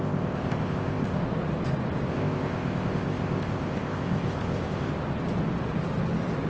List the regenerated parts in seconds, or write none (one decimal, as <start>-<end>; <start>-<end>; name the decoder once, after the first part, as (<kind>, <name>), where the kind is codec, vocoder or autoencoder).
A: 0.0-1.2 (codec, ZipCodec); 2.1-4.9